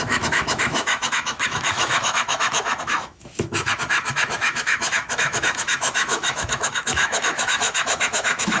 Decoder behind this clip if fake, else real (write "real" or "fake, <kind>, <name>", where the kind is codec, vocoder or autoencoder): fake, autoencoder, DAC-VAE